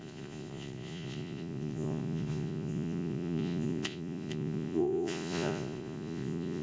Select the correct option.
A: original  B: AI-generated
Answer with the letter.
B